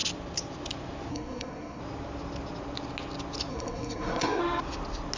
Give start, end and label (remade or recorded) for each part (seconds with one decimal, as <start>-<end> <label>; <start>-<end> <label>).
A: 0.0-1.1 recorded; 1.1-1.8 remade; 1.8-3.5 recorded; 3.5-4.4 remade; 4.4-5.2 recorded